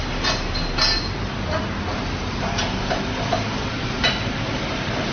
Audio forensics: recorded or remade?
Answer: recorded